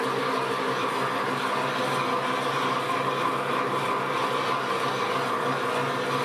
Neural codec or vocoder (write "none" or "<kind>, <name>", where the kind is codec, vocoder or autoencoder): none